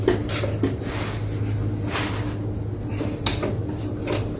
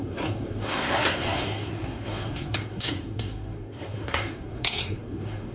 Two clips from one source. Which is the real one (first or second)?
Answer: first